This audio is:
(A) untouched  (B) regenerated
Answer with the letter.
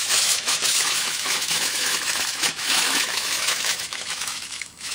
B